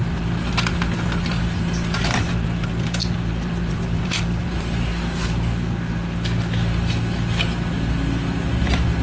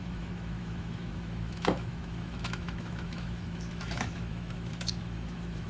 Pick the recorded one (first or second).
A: first